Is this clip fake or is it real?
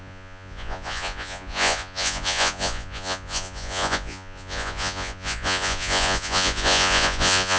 fake